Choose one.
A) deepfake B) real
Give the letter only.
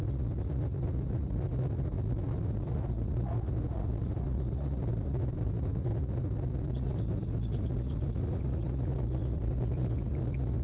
A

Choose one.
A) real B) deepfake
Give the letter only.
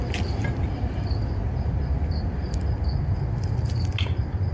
A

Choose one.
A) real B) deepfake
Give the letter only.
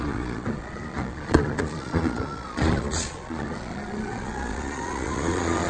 B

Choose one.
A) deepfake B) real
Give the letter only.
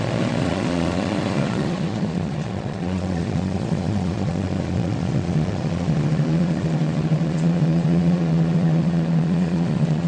A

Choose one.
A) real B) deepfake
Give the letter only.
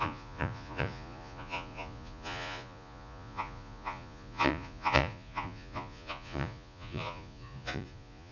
B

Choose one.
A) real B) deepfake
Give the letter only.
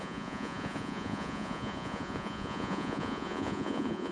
B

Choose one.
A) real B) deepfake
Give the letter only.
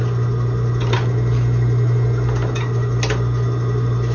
A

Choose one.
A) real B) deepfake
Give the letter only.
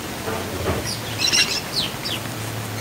A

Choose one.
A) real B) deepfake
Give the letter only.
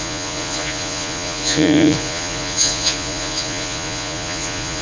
B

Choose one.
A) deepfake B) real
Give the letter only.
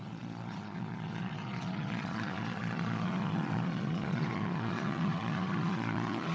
A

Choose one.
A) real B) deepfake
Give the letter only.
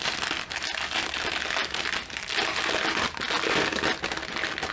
A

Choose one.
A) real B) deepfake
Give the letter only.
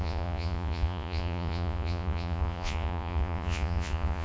B